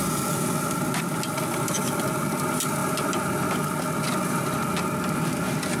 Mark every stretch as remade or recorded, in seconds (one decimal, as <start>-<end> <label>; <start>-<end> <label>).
0.0-5.8 recorded